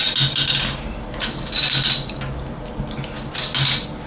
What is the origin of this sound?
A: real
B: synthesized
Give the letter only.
A